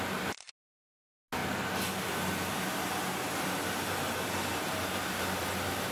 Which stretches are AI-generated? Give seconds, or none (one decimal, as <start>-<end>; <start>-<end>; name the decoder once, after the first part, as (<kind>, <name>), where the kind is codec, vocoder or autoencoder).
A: none